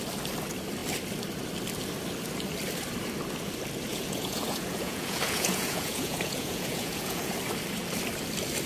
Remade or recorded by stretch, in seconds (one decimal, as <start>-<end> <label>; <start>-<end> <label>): 0.0-3.9 recorded; 3.9-7.3 remade; 7.3-8.7 recorded